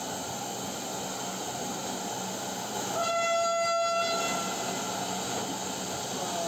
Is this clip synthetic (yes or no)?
no